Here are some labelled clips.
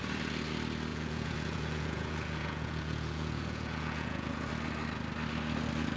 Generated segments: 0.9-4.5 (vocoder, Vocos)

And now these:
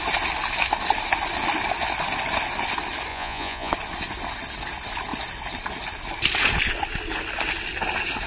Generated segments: 3.1-3.7 (vocoder, Vocos)

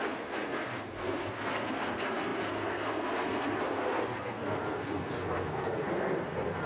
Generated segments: 0.0-6.7 (codec, SNAC)

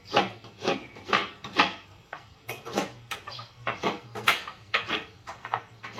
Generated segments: 0.0-6.0 (codec, SNAC)

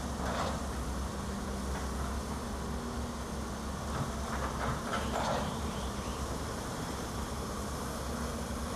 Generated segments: 4.9-7.6 (vocoder, BigVGAN v2)

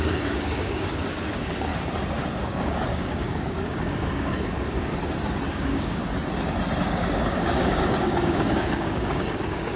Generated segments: 0.0-1.7 (codec, DAC); 2.4-4.9; 5.5-6.0; 6.8-9.8

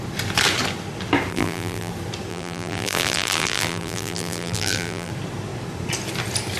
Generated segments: 1.3-1.9 (vocoder, BigVGAN v2); 2.3-5.1